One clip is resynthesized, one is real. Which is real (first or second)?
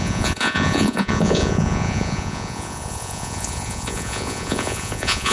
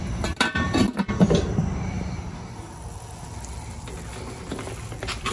second